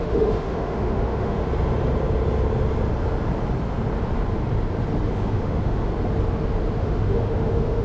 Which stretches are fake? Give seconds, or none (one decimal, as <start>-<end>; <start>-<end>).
0.0-1.4; 5.1-5.9; 6.8-7.8